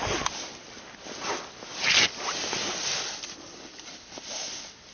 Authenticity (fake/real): real